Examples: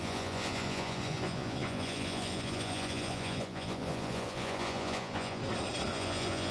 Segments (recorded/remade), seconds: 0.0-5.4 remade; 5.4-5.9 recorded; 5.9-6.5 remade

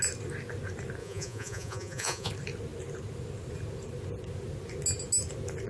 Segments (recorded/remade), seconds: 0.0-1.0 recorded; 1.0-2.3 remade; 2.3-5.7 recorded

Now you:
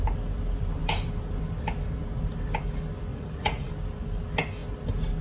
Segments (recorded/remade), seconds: 0.0-3.1 recorded; 3.1-3.7 remade; 3.7-5.2 recorded